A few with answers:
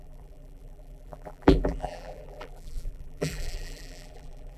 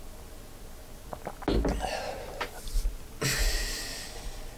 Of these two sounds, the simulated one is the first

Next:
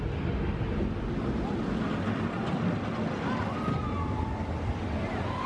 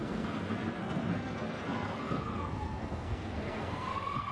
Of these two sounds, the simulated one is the second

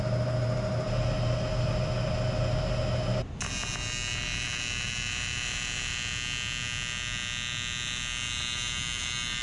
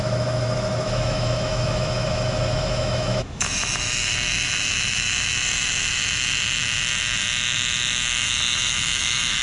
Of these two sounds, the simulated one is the second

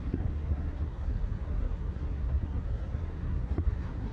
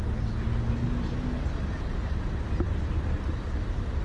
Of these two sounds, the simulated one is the first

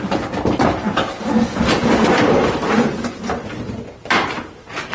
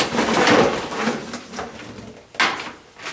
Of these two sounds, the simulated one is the first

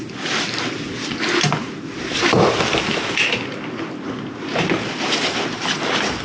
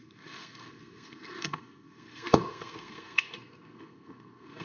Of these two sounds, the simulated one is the second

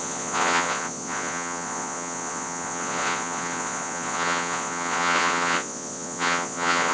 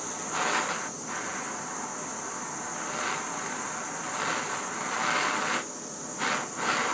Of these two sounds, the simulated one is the first